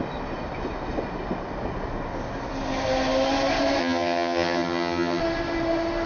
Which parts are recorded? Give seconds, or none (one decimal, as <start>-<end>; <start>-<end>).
0.0-3.8; 5.2-6.1